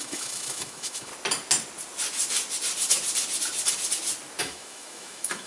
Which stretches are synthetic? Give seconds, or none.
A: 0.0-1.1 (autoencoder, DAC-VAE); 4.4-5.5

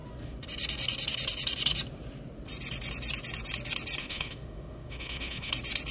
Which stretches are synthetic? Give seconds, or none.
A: 4.0-5.5 (autoencoder, DAC-VAE)